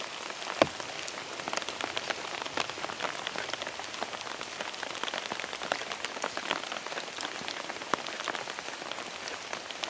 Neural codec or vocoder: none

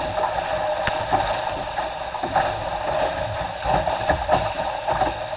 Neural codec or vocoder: none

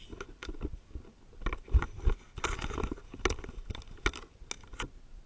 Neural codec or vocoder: none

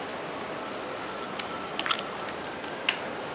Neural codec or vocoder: none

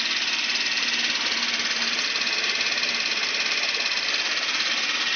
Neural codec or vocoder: none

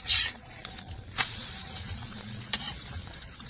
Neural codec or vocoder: vocoder, Vocos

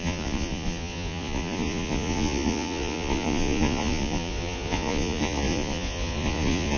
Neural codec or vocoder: vocoder, Vocos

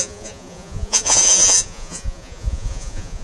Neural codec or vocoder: vocoder, Vocos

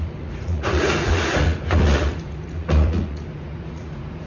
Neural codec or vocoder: vocoder, Vocos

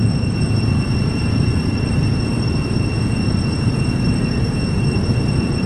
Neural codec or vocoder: vocoder, Vocos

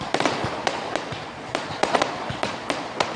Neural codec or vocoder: vocoder, Vocos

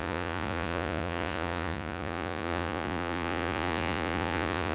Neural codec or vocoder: vocoder, Vocos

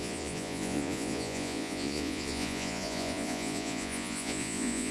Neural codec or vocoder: vocoder, Vocos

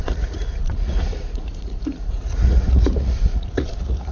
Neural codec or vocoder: vocoder, Vocos